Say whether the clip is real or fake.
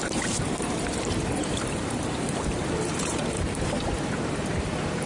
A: fake